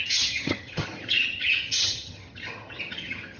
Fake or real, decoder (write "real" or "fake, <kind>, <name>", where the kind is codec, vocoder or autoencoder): fake, vocoder, HiFi-GAN